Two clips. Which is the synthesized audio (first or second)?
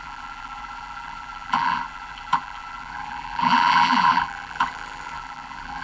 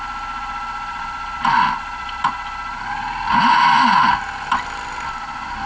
first